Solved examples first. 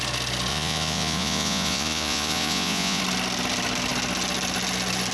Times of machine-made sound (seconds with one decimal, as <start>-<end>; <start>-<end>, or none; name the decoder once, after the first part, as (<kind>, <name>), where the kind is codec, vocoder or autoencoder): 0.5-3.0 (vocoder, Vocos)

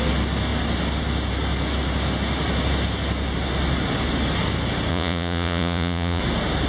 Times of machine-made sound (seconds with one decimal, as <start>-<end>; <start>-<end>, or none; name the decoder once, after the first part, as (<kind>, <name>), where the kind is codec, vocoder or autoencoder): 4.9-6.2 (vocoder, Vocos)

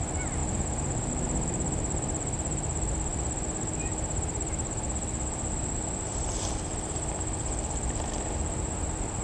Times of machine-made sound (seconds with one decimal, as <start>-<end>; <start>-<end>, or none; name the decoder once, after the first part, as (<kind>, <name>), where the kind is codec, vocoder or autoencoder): 0.4-1.1 (vocoder, Vocos)

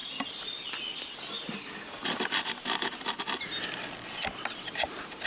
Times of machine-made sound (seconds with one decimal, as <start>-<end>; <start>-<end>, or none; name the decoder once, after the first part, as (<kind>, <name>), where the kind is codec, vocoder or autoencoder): none

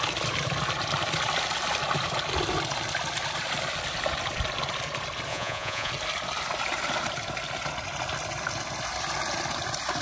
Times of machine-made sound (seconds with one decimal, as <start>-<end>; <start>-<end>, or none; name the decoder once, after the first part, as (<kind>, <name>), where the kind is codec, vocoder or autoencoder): 5.3-5.9 (vocoder, Vocos)